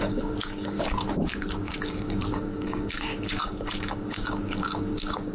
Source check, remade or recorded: remade